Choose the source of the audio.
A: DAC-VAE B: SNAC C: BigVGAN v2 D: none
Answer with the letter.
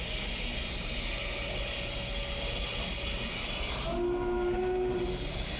D